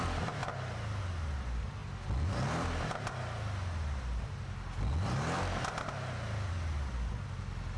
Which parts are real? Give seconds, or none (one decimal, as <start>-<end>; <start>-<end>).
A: 0.0-7.8